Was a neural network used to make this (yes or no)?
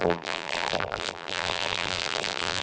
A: yes